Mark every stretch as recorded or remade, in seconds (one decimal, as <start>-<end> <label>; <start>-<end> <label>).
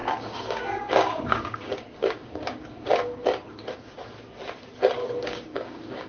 0.0-3.7 remade; 3.7-5.0 recorded; 5.0-6.1 remade